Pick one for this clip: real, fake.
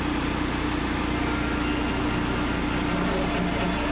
real